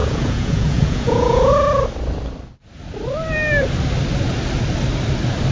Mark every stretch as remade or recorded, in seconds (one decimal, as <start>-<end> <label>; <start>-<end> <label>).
0.0-1.5 remade; 1.5-5.5 recorded